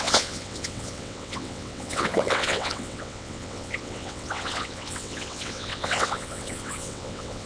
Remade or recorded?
remade